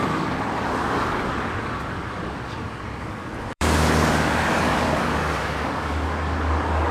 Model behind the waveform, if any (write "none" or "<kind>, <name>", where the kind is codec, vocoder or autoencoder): codec, DAC